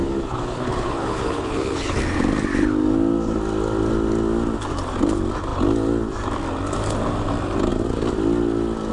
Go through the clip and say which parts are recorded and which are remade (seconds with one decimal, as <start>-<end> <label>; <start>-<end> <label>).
0.0-2.0 remade; 2.0-8.9 recorded